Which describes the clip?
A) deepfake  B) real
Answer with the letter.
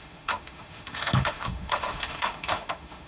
A